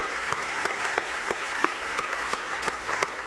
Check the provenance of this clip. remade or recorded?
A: remade